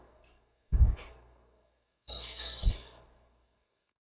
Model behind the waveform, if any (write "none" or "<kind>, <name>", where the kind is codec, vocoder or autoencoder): codec, SNAC